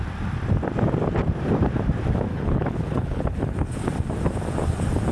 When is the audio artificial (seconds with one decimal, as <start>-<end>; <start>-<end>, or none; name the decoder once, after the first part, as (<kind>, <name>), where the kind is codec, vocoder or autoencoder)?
2.3-3.8 (codec, HILCodec)